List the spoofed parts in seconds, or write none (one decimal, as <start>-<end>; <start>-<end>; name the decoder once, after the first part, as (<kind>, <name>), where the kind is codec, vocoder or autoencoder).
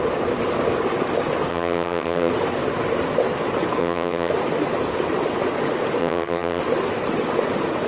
1.5-2.3 (vocoder, HiFi-GAN); 3.8-4.3; 6.0-6.6